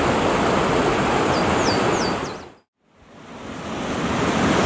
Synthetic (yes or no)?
no